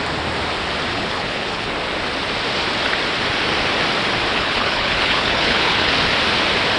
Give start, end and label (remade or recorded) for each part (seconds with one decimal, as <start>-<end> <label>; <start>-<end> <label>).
0.0-0.9 recorded; 0.9-1.7 remade; 1.7-4.3 recorded; 4.3-5.9 remade; 5.9-6.8 recorded